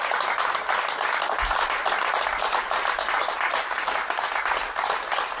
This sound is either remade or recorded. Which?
recorded